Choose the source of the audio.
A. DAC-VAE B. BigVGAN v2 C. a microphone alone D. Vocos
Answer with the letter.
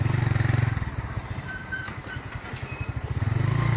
C